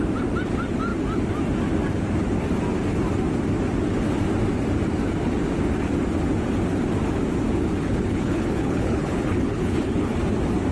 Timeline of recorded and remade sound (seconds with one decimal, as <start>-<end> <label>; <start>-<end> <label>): 0.0-7.8 recorded; 7.8-10.1 remade; 10.1-10.7 recorded